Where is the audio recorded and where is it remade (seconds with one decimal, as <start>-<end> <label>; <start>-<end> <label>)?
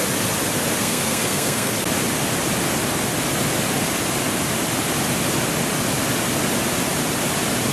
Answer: 0.0-0.8 recorded; 0.8-1.7 remade; 1.7-7.7 recorded